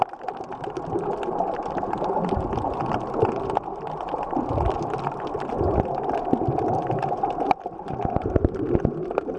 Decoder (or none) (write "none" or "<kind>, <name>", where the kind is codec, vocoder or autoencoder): none